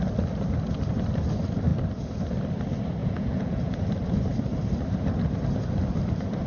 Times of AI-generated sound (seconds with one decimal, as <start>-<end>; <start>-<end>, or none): 3.0-3.8

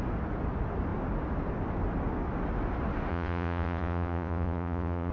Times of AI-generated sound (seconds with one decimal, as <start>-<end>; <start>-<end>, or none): 3.1-5.1

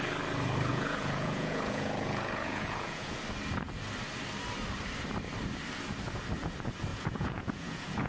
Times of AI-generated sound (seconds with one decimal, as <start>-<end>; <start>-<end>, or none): 0.7-3.2; 6.9-8.1

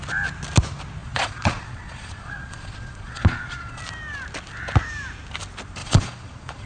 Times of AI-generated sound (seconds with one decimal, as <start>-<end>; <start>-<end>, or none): 1.0-3.8; 5.8-6.7